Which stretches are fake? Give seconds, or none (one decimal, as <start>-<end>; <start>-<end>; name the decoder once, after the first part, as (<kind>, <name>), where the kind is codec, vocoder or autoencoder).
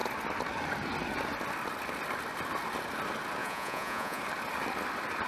3.4-4.2 (vocoder, Vocos)